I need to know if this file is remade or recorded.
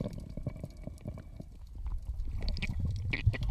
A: recorded